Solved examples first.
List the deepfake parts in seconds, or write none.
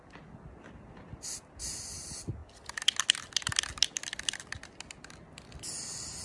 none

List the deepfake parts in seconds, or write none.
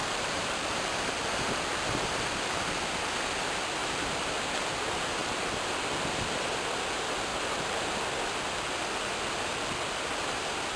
0.0-0.9 (vocoder, BigVGAN v2); 3.8-4.3; 5.2-5.8; 7.3-7.9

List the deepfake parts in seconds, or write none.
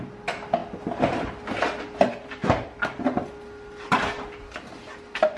0.6-1.8 (vocoder, BigVGAN v2)